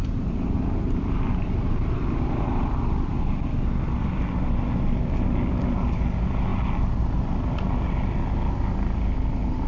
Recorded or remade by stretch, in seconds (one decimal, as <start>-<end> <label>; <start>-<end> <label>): 0.0-2.8 remade; 2.8-9.7 recorded